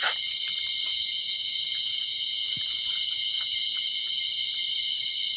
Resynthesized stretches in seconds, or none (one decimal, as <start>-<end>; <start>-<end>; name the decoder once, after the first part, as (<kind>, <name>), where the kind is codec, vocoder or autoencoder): 0.9-4.1 (vocoder, Vocos)